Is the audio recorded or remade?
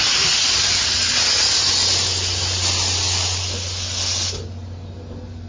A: recorded